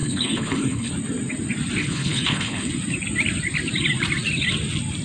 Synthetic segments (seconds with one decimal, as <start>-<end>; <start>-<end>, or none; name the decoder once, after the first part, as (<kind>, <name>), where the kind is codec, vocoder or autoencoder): 0.0-0.9 (codec, HILCodec); 1.8-2.7